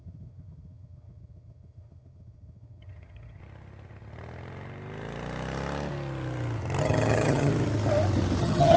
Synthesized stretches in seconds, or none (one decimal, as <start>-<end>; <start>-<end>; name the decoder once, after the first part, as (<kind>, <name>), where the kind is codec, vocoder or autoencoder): 0.0-3.4 (vocoder, HiFi-GAN); 6.8-7.5; 8.4-8.8